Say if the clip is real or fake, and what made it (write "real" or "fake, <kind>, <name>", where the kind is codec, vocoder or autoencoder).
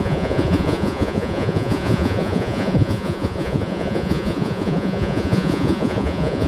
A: fake, vocoder, Vocos